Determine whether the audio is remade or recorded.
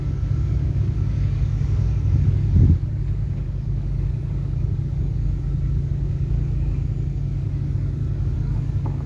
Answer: remade